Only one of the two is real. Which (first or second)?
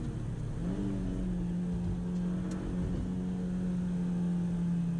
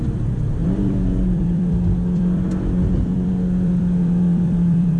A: first